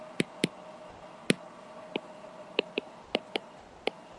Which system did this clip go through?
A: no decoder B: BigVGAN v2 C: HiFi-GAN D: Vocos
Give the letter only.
B